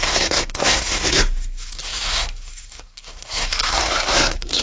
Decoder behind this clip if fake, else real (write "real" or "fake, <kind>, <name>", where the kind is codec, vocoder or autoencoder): fake, codec, SNAC